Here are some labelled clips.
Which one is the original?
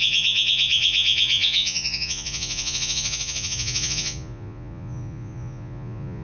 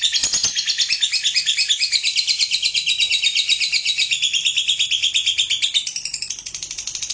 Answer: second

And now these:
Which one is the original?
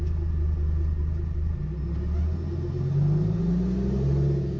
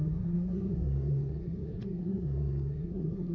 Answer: first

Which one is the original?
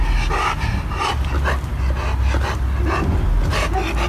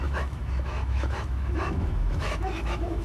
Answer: first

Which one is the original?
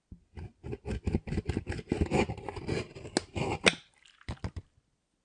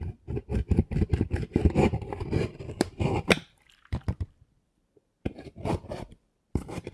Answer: first